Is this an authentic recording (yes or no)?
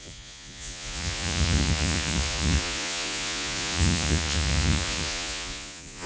no